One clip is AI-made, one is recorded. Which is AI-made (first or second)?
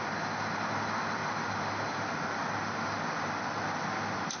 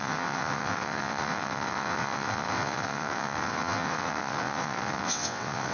second